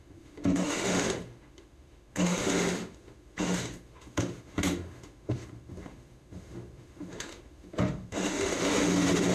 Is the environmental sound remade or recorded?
remade